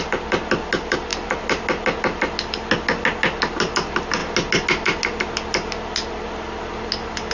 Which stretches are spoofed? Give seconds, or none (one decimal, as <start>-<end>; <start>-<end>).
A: none